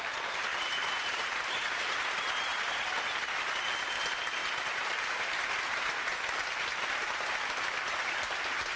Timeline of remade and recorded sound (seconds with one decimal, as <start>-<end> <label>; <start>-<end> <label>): 0.0-0.5 recorded; 0.5-1.6 remade; 1.6-2.5 recorded; 2.5-3.3 remade; 3.3-4.4 recorded; 4.4-5.5 remade; 5.5-8.8 recorded